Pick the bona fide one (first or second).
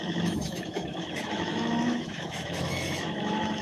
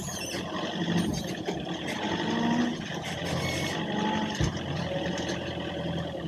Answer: second